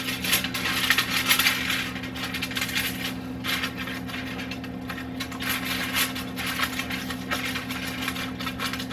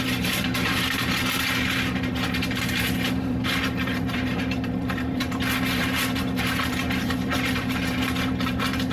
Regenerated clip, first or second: second